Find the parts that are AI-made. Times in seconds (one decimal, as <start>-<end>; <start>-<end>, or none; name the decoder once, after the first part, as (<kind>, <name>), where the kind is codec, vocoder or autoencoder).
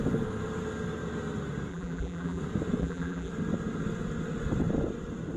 1.7-2.4 (vocoder, BigVGAN v2); 2.8-3.3